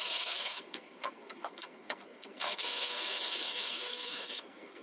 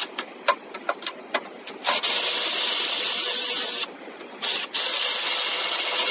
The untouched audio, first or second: second